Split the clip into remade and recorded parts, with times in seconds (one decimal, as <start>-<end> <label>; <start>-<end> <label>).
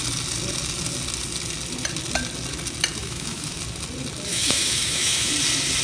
0.0-3.0 recorded; 3.0-3.6 remade; 3.6-4.3 recorded; 4.3-5.3 remade; 5.3-5.8 recorded